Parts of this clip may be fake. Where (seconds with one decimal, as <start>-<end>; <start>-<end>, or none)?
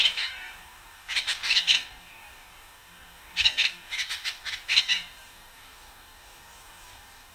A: 0.0-7.3